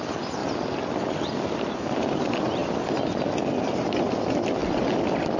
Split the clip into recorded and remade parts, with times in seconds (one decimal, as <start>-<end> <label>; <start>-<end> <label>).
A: 0.0-5.4 recorded